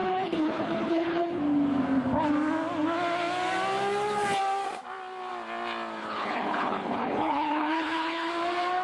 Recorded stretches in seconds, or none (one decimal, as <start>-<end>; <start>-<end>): 1.4-6.0; 8.3-8.8